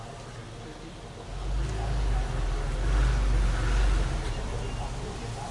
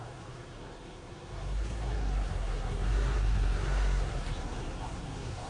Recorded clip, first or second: first